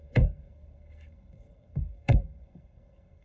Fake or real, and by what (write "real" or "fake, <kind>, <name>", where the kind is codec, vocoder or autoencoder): fake, codec, SNAC